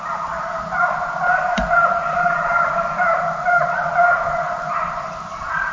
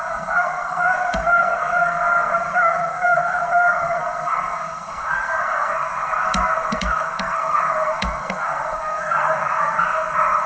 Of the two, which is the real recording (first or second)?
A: first